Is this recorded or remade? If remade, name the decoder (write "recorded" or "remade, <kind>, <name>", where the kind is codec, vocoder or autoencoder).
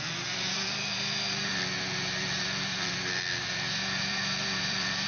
remade, vocoder, BigVGAN v2